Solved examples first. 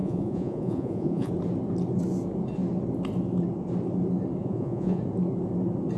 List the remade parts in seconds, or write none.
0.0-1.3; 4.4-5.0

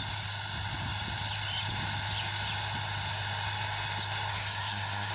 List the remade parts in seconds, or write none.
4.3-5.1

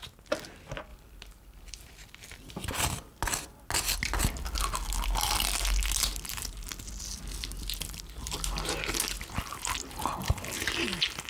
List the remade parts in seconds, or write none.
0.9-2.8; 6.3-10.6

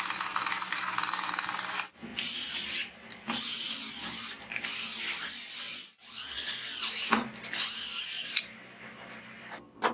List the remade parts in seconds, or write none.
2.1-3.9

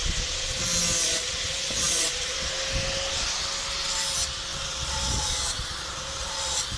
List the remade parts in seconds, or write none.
0.0-0.6; 1.0-2.5; 4.5-6.8

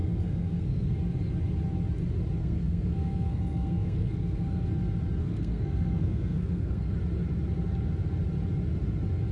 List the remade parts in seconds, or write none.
0.0-0.9; 2.4-4.7; 5.2-6.9

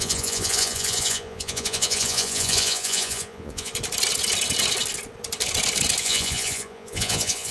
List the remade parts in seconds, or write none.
0.0-3.7; 6.0-7.5

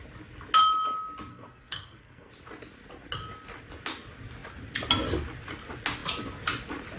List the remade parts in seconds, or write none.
1.3-2.3